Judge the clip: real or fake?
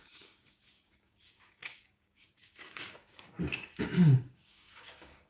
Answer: fake